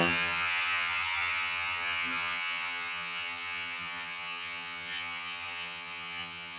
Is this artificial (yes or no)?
yes